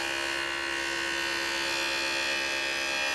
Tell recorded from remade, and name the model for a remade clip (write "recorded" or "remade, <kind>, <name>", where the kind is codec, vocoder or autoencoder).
recorded